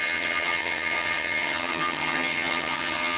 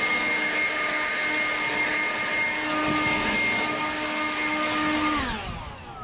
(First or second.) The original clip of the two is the second